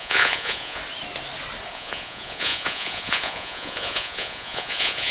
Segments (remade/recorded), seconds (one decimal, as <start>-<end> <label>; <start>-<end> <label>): 0.0-0.8 remade; 0.8-1.7 recorded; 1.7-5.1 remade